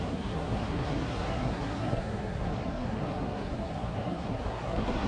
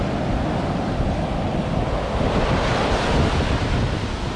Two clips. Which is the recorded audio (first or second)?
second